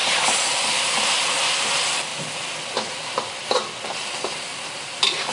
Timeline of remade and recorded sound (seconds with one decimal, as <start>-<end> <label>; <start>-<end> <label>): 0.0-2.1 remade; 2.1-3.0 recorded; 3.0-5.3 remade